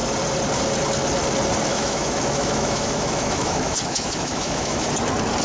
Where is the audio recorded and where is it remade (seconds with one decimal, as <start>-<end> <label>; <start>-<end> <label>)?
0.0-1.7 recorded; 1.7-4.9 remade; 4.9-5.4 recorded